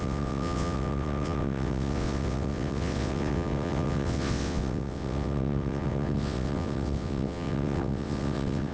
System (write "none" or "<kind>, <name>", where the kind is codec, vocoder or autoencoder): vocoder, WaveNeXt